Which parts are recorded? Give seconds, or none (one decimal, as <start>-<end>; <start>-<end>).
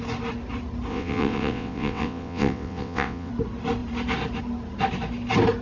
0.0-0.9; 3.3-5.6